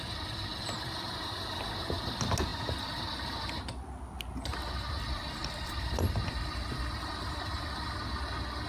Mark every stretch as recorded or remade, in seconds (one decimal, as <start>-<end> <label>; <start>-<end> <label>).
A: 0.0-5.4 recorded; 5.4-8.0 remade; 8.0-8.7 recorded

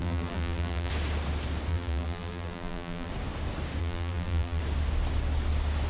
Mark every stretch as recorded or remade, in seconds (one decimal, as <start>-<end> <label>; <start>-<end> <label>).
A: 0.0-0.9 remade; 0.9-1.7 recorded; 1.7-3.1 remade; 3.1-3.8 recorded; 3.8-4.6 remade; 4.6-5.9 recorded

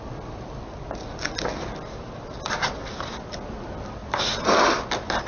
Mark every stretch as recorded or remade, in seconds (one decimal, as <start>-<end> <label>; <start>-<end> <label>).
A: 0.0-5.3 recorded

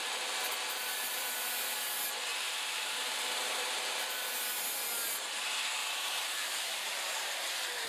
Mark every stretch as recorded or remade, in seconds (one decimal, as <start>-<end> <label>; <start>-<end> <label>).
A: 0.0-2.3 recorded; 2.3-3.7 remade; 3.7-5.8 recorded; 5.8-7.9 remade

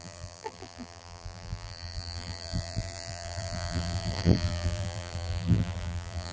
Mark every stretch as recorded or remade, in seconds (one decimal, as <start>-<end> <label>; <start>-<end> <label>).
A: 0.0-6.3 remade